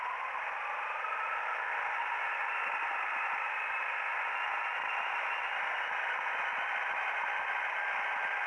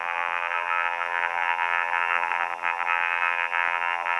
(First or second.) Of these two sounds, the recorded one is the first